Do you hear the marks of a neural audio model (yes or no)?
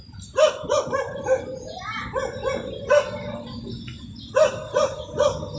no